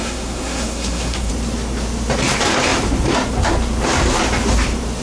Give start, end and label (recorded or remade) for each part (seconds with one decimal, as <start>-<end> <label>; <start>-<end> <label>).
0.0-1.3 remade; 1.3-5.0 recorded